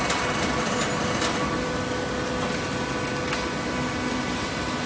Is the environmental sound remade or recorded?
recorded